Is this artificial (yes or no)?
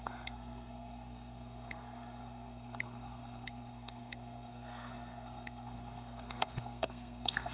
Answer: yes